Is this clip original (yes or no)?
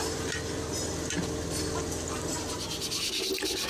yes